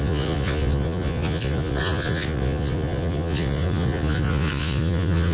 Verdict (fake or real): fake